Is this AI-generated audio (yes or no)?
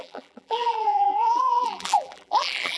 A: yes